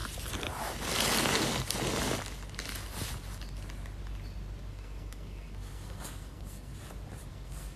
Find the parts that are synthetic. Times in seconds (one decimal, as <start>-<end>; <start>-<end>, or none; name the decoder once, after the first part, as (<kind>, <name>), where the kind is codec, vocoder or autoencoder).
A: 4.7-6.7 (codec, SNAC); 7.3-7.8

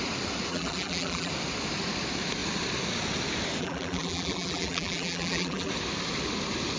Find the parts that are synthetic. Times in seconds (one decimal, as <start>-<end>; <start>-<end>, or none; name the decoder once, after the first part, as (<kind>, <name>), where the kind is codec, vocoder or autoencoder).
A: 0.5-1.3 (vocoder, BigVGAN v2); 3.6-5.7

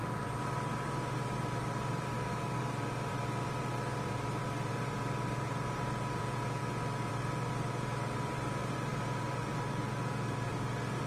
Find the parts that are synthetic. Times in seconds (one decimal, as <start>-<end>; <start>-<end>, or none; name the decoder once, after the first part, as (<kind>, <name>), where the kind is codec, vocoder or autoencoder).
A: 0.0-6.6 (vocoder, BigVGAN v2); 7.1-11.1

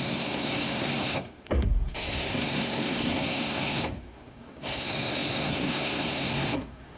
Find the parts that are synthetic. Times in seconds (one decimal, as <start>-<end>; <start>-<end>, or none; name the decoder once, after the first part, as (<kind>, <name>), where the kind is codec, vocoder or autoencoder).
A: 0.0-7.0 (codec, SNAC)

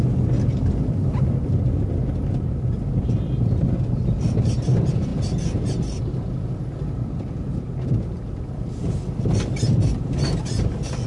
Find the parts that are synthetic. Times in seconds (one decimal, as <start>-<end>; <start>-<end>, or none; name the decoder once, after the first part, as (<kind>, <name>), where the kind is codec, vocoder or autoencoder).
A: none

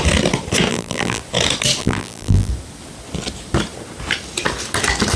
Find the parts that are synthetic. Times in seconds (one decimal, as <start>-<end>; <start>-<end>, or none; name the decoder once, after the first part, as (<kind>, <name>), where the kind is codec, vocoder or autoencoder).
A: 0.7-1.2 (vocoder, BigVGAN v2); 1.8-2.5